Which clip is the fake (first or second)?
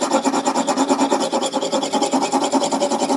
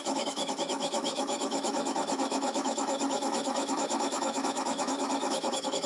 second